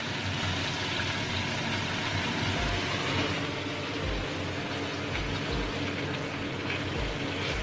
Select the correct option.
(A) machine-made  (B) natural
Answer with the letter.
B